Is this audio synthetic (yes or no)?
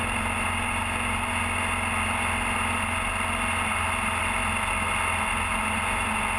no